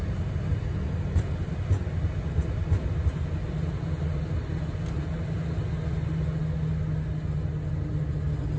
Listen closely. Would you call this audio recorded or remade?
recorded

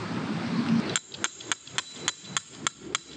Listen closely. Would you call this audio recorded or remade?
recorded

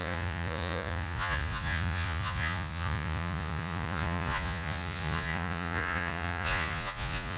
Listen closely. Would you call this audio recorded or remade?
remade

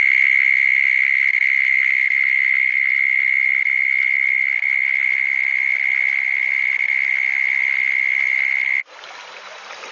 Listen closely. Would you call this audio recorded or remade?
recorded